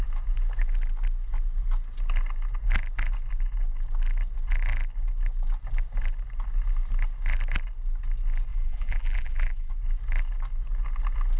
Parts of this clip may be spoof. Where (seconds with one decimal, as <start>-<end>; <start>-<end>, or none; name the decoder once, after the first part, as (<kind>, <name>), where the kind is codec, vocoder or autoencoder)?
8.5-9.7 (vocoder, BigVGAN v2)